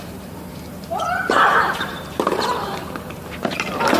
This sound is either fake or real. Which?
fake